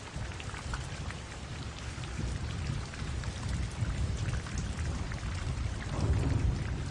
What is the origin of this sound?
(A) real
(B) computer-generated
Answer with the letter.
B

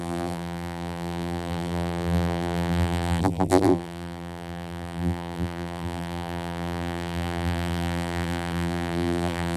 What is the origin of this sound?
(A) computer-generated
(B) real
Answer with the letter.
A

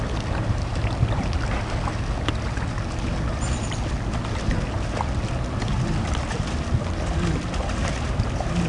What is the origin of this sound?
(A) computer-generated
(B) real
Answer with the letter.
B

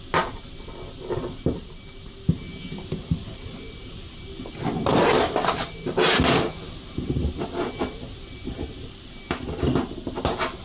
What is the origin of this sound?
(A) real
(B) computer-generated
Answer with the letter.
A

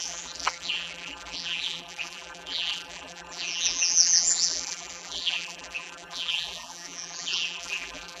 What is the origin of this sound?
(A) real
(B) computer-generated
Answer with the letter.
B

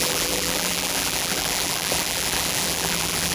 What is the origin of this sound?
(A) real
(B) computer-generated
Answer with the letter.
B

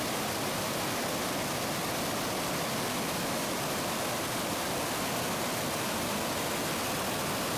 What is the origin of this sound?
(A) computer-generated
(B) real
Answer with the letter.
B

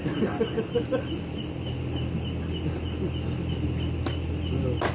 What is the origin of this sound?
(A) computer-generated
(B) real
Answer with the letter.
B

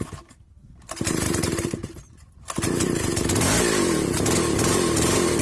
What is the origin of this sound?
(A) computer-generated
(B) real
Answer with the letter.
B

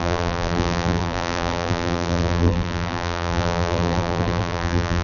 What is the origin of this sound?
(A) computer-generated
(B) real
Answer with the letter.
A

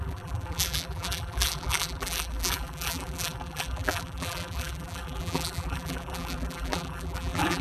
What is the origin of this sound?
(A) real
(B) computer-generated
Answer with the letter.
B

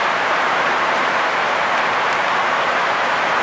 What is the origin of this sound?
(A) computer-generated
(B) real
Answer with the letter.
A